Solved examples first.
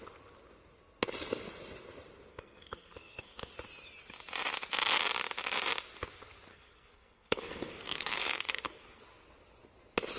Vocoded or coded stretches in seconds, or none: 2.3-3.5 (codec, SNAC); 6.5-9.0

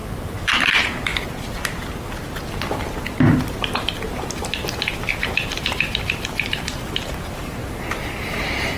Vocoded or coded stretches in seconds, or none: 0.0-1.1 (vocoder, BigVGAN v2); 5.1-7.6; 8.1-8.8

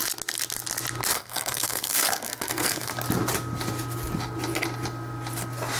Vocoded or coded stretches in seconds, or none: 1.1-2.9 (codec, SNAC)

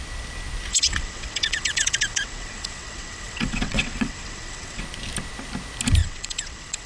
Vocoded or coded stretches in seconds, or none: 0.7-4.8 (vocoder, WaveNeXt); 6.0-6.9

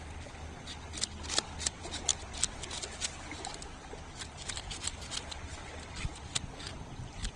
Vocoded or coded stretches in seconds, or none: none

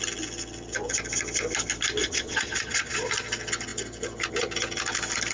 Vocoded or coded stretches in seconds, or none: 2.0-3.1 (vocoder, Vocos)

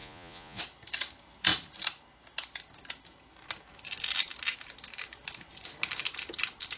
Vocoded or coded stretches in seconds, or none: 0.0-0.6 (vocoder, Vocos)

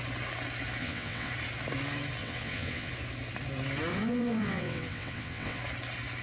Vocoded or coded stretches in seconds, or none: 0.8-1.3 (vocoder, WaveNeXt); 2.2-2.9; 3.9-5.6